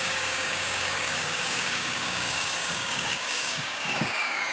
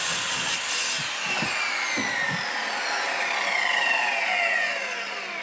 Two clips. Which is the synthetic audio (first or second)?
first